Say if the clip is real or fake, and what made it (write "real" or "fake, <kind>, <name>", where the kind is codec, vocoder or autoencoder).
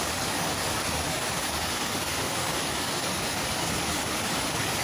fake, codec, DAC